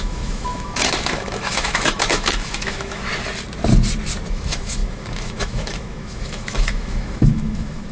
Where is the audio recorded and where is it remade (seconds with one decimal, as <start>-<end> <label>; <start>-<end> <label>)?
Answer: 0.0-3.1 remade; 3.1-4.3 recorded; 4.3-7.9 remade